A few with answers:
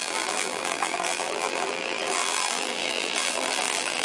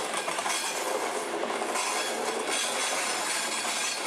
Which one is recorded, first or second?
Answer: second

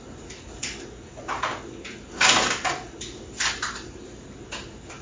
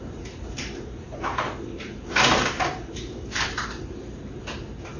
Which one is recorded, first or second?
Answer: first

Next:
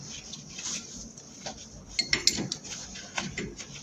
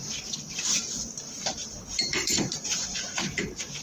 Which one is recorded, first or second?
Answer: first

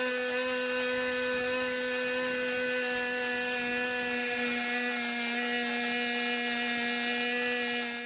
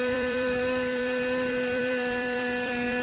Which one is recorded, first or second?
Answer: first